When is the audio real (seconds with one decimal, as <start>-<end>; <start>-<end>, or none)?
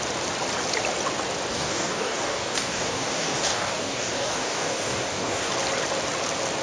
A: 0.0-1.5; 5.5-6.6